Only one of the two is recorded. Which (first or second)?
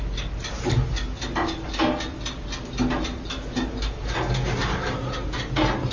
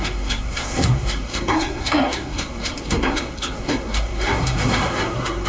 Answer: first